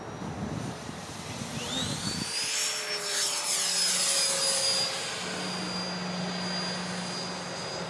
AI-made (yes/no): no